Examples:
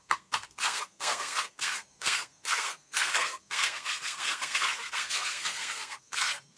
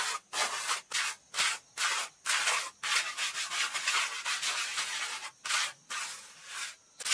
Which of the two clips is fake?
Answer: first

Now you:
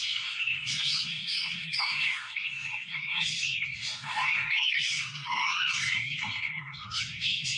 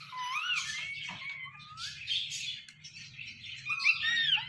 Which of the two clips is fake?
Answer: first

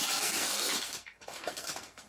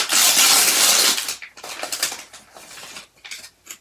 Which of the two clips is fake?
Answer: first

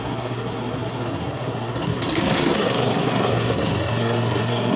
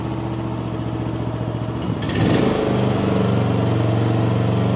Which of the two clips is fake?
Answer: first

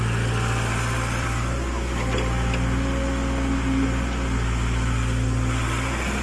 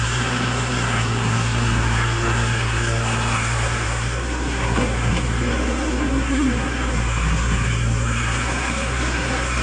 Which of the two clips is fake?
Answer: second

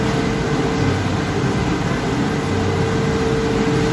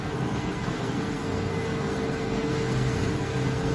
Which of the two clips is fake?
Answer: second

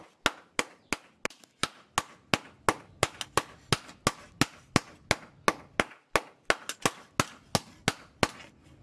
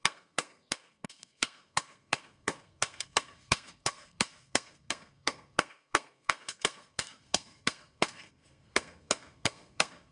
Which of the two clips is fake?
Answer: second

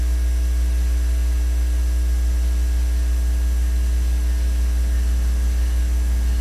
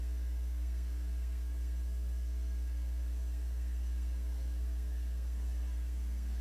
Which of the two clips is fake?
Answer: second